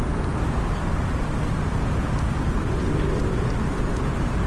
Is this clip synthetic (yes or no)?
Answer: no